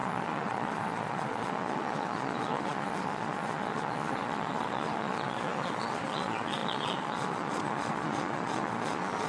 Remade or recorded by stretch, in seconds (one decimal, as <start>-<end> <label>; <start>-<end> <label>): 0.0-9.3 remade